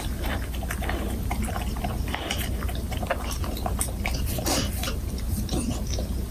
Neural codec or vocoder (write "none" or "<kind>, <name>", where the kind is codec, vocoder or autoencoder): none